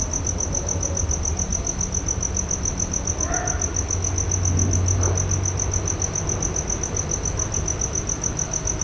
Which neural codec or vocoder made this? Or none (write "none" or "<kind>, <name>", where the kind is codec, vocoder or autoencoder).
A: none